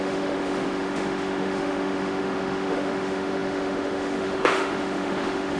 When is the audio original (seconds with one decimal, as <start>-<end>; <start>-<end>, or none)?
none